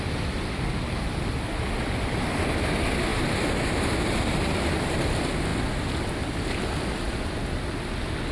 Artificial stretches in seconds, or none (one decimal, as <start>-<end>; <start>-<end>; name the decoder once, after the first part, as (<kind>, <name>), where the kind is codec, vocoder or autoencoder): none